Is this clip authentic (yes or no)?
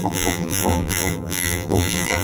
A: no